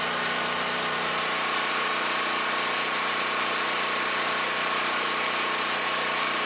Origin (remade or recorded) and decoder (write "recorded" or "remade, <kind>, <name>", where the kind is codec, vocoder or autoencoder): recorded